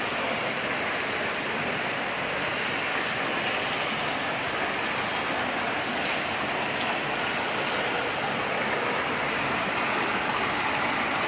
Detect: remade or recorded recorded